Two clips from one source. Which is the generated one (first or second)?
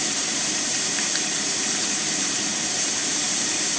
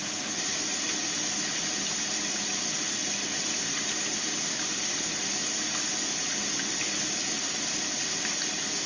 first